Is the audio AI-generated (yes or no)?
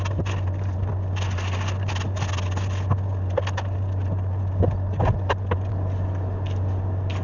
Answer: no